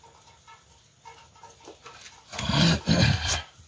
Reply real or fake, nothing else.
real